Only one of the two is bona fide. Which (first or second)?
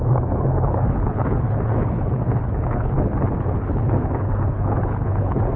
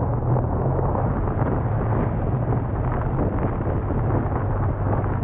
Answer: second